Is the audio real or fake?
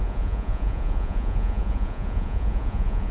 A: fake